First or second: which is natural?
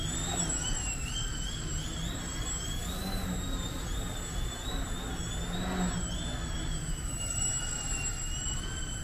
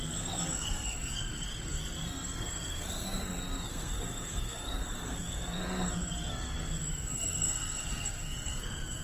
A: first